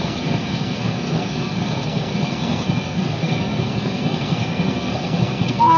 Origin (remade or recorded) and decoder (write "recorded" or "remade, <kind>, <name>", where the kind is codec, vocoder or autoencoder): remade, codec, SNAC